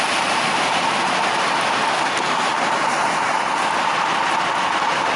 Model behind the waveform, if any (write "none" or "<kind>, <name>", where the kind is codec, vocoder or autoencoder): none